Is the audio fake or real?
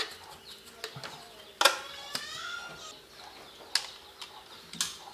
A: real